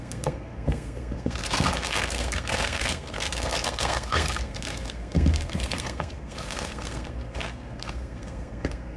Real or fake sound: fake